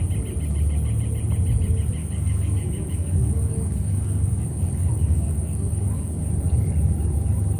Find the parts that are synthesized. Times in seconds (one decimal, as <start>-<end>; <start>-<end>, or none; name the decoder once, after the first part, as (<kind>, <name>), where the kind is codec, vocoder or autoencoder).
2.0-6.3 (codec, DAC)